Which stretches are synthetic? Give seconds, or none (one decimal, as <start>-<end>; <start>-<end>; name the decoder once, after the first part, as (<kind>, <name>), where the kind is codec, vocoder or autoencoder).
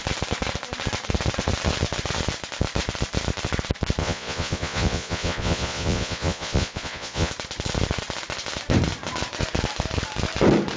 4.0-7.3 (vocoder, Vocos)